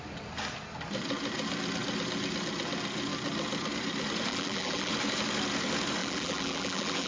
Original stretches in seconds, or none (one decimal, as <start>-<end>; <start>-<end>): 0.0-4.3; 4.9-6.0